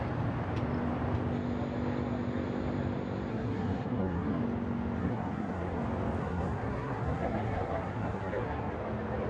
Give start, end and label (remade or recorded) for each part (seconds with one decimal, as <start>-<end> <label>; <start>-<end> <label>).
0.0-3.3 recorded; 3.3-4.4 remade; 4.4-5.0 recorded; 5.0-5.8 remade; 5.8-6.2 recorded; 6.2-8.7 remade; 8.7-9.3 recorded